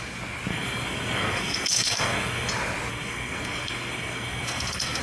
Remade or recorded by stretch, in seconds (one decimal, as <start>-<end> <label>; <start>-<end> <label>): 0.0-0.5 recorded; 0.5-2.5 remade; 2.5-2.9 recorded; 2.9-5.0 remade